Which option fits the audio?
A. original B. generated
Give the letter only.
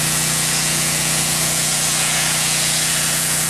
B